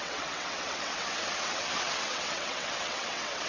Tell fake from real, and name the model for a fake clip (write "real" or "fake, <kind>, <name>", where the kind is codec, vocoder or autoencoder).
fake, vocoder, WaveNeXt